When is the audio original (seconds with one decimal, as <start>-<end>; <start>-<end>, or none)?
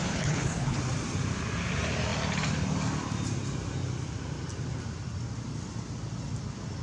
0.8-6.8